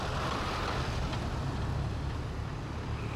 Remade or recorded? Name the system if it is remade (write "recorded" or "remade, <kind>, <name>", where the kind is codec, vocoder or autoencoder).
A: recorded